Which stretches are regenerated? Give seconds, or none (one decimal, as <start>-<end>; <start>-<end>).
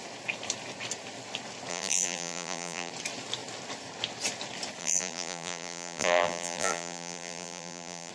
1.7-2.9; 4.8-8.1